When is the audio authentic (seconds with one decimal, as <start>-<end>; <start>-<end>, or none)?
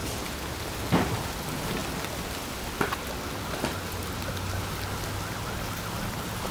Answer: 0.0-6.5